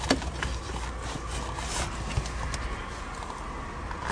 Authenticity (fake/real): real